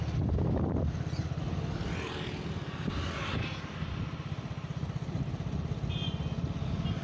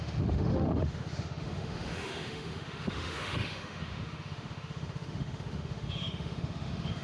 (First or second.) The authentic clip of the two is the first